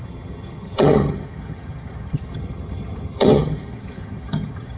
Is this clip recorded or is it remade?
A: remade